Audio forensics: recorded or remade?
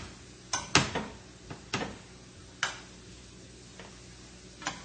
recorded